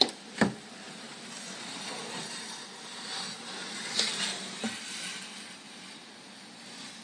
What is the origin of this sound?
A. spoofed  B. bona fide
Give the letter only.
B